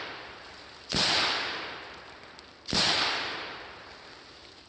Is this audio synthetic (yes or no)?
yes